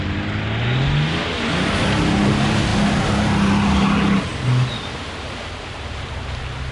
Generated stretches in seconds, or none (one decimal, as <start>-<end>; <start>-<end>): none